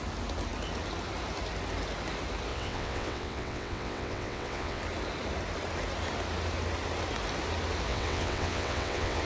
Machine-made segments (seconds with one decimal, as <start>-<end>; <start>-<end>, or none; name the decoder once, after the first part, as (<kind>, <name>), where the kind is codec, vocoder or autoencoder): 2.5-4.8 (vocoder, WaveNeXt); 7.9-9.2